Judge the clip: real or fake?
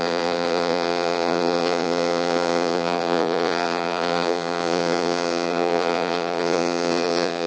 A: fake